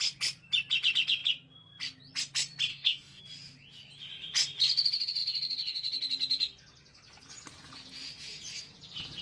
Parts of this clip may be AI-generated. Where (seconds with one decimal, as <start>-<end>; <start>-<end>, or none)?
2.7-3.2